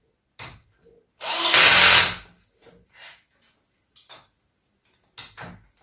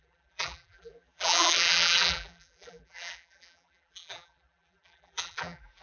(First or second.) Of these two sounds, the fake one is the second